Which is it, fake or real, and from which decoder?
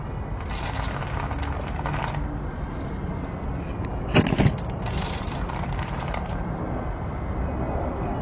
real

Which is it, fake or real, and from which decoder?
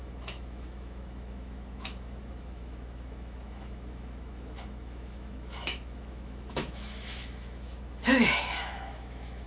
fake, autoencoder, DAC-VAE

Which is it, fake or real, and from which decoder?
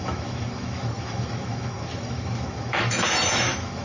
fake, autoencoder, DAC-VAE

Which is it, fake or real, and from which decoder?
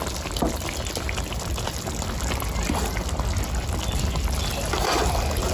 real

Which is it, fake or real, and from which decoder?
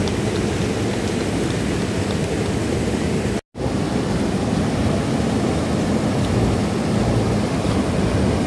real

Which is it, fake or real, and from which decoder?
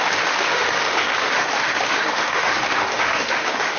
fake, autoencoder, DAC-VAE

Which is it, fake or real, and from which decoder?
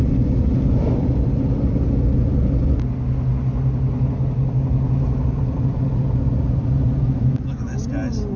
real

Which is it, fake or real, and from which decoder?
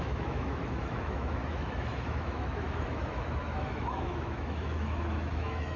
fake, autoencoder, DAC-VAE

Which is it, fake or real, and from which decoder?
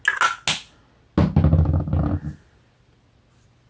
real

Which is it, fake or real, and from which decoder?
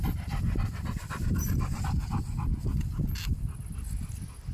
real